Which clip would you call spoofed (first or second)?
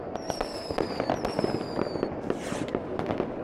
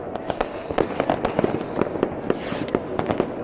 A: first